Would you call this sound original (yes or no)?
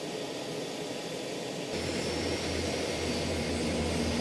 yes